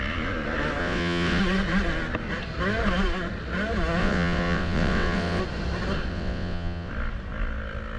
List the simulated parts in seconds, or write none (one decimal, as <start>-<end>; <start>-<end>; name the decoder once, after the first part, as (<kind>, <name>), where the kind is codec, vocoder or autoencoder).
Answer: 0.8-1.4 (vocoder, WaveNeXt); 4.0-5.4; 6.1-6.9